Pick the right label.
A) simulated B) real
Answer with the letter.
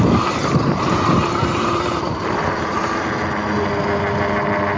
B